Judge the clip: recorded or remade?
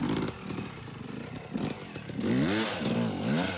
recorded